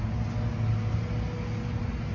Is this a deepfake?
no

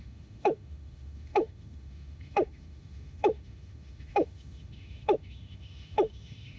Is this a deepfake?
yes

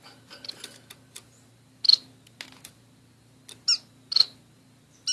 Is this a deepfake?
no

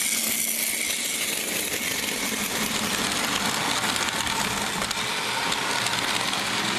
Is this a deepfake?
no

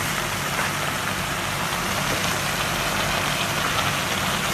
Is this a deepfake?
no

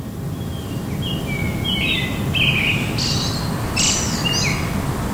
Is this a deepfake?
no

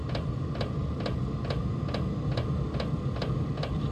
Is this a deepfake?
no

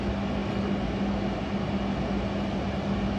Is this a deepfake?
no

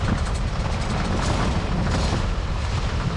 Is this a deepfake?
no